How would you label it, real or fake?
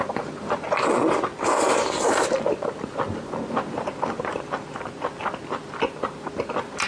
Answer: real